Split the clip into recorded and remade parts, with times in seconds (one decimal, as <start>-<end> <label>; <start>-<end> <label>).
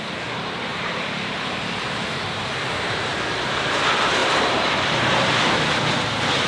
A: 0.0-0.7 recorded; 0.7-3.0 remade; 3.0-4.2 recorded; 4.2-4.9 remade; 4.9-6.5 recorded